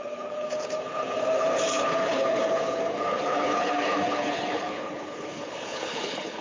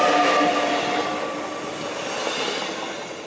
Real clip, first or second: second